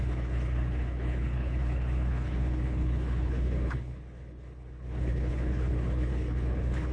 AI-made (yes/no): yes